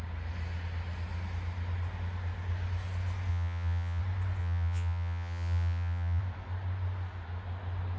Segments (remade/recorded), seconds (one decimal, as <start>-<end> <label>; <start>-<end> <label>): 0.0-3.3 recorded; 3.3-4.0 remade; 4.0-4.4 recorded; 4.4-6.2 remade; 6.2-8.0 recorded